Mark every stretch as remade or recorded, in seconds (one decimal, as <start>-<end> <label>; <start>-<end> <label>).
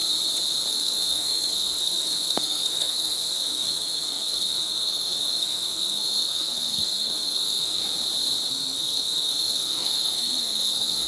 0.0-0.7 recorded; 0.7-7.8 remade; 7.8-8.5 recorded; 8.5-11.1 remade